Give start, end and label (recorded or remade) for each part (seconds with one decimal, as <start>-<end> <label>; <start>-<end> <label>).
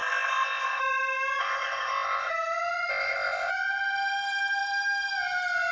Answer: 0.0-0.8 remade; 0.8-1.4 recorded; 1.4-2.3 remade; 2.3-2.9 recorded; 2.9-3.5 remade; 3.5-5.7 recorded